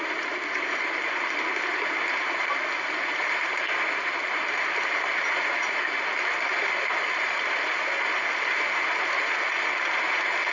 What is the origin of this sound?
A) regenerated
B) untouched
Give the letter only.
B